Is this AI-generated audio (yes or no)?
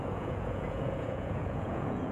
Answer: yes